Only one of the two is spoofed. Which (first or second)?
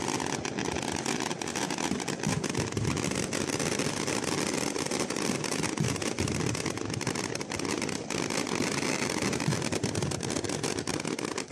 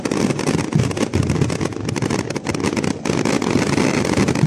first